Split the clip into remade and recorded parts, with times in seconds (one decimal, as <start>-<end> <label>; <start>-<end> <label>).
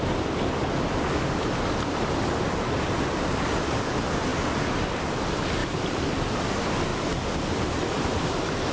0.0-8.7 recorded